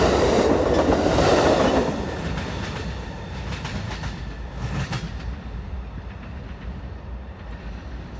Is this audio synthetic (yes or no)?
no